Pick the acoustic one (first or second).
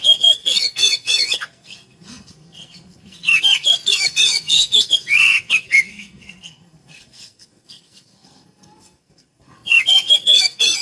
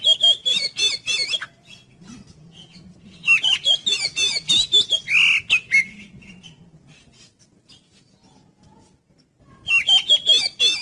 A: second